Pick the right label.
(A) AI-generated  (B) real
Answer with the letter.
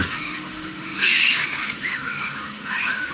A